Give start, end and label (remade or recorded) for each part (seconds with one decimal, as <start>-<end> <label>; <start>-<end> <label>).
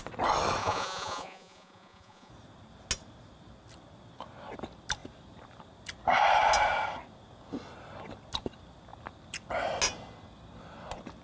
0.0-0.6 recorded; 0.6-2.3 remade; 2.3-11.2 recorded